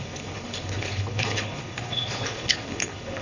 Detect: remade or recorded remade